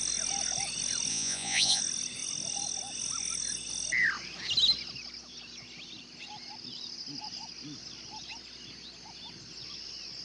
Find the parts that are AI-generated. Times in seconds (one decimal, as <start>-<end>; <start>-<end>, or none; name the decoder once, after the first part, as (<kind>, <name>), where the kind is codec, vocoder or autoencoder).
1.1-1.8 (vocoder, Vocos)